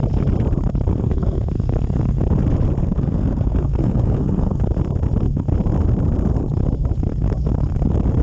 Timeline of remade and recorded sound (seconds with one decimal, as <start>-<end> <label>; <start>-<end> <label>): 0.0-0.9 recorded; 0.9-2.2 remade; 2.2-2.8 recorded; 2.8-4.6 remade; 4.6-8.2 recorded